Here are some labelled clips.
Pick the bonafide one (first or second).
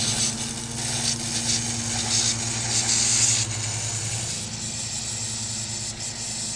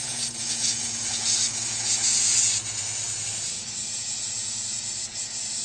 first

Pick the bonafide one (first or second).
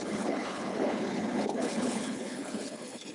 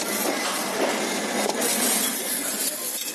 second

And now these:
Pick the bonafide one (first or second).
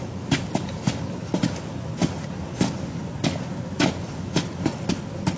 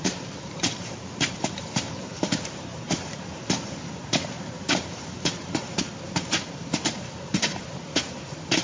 first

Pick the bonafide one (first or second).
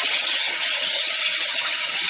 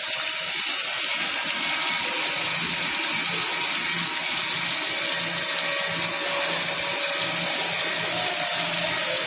second